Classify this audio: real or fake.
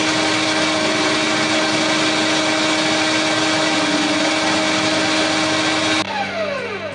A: real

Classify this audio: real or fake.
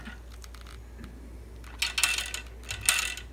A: real